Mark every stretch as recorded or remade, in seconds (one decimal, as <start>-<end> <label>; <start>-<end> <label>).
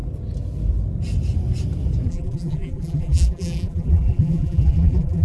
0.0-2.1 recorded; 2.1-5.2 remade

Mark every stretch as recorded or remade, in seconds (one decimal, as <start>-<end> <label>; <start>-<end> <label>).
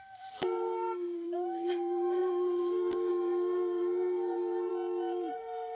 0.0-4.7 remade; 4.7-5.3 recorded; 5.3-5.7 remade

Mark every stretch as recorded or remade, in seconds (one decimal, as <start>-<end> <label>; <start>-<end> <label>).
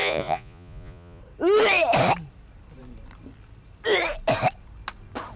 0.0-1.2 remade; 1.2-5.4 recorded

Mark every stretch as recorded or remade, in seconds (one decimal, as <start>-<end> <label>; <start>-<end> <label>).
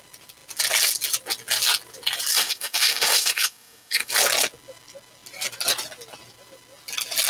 0.0-2.3 recorded; 2.3-4.1 remade; 4.1-7.3 recorded